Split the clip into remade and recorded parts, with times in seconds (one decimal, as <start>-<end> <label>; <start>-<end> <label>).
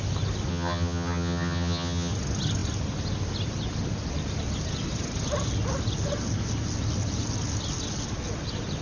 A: 0.0-0.5 recorded; 0.5-2.1 remade; 2.1-8.8 recorded